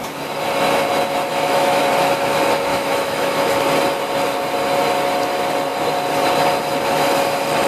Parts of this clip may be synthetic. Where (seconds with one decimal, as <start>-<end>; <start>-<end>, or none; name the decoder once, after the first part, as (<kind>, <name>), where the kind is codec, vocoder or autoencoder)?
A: 1.3-1.8 (autoencoder, DAC-VAE); 2.7-3.6

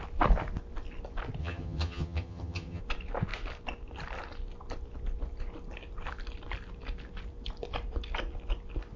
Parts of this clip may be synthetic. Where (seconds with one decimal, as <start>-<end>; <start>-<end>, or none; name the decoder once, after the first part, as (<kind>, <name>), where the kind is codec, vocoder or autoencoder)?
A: 1.4-2.8 (vocoder, HiFi-GAN)

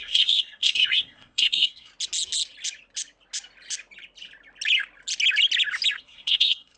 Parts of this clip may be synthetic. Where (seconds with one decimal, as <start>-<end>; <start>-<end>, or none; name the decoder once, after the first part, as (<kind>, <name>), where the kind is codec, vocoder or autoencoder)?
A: 0.0-1.9 (codec, SNAC); 6.0-6.8

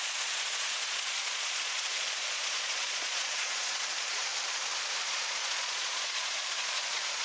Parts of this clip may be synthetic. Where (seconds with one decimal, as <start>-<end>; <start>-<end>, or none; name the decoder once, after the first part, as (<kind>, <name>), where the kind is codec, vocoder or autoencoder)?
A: 0.0-4.3 (vocoder, Vocos); 5.0-7.2

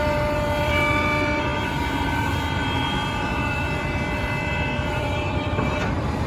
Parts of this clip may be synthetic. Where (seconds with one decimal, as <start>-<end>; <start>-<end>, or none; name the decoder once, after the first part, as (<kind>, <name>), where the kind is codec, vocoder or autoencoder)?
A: 0.0-6.3 (vocoder, BigVGAN v2)

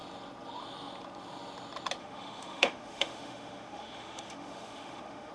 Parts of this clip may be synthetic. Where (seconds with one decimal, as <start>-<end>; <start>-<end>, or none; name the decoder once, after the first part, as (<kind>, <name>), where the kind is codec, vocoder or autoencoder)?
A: 2.0-5.3 (autoencoder, DAC-VAE)